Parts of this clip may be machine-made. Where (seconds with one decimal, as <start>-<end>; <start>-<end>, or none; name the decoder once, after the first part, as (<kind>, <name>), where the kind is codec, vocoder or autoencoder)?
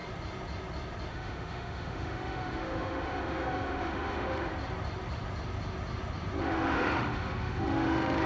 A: 1.1-4.5 (autoencoder, DAC-VAE); 6.4-8.3